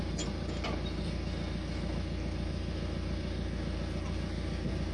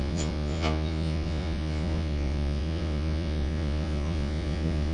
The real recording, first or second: first